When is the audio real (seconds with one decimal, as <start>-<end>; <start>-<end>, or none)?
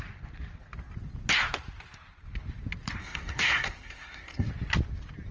0.0-3.0; 4.5-5.3